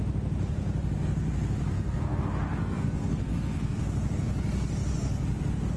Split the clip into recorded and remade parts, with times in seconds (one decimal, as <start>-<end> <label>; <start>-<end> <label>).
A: 0.0-1.7 recorded; 1.7-2.2 remade; 2.2-2.6 recorded; 2.6-3.8 remade; 3.8-5.8 recorded